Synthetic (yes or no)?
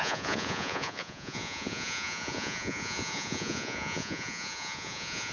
yes